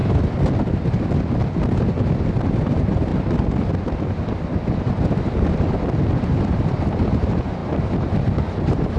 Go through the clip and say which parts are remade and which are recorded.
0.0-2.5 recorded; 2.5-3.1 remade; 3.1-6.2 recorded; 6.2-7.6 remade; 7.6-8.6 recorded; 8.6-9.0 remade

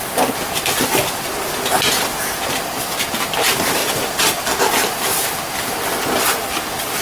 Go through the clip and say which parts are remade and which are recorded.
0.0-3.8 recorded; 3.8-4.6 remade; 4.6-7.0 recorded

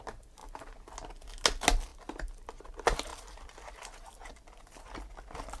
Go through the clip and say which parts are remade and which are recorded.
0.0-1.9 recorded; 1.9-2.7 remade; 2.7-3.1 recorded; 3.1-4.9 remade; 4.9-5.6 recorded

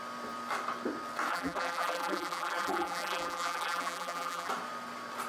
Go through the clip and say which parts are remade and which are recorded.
0.0-1.3 recorded; 1.3-4.5 remade; 4.5-5.3 recorded

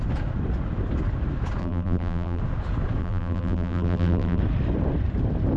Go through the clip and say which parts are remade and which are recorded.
0.0-1.6 recorded; 1.6-2.4 remade; 2.4-3.0 recorded; 3.0-4.4 remade; 4.4-5.6 recorded

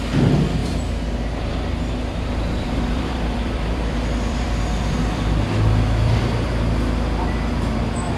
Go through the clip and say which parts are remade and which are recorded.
0.0-0.6 recorded; 0.6-5.0 remade; 5.0-8.2 recorded

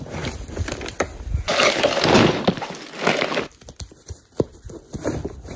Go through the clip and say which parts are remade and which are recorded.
0.0-5.6 recorded

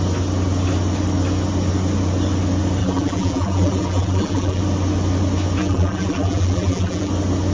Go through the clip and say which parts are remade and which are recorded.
0.0-2.8 recorded; 2.8-4.6 remade; 4.6-5.6 recorded; 5.6-7.1 remade; 7.1-7.5 recorded